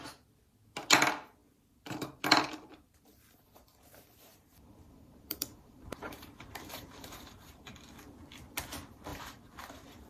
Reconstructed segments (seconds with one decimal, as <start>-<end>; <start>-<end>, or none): 1.4-2.2; 2.7-7.7; 9.1-10.1